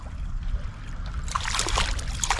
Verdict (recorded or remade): recorded